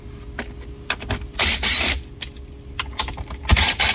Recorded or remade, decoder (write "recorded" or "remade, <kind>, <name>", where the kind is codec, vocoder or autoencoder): recorded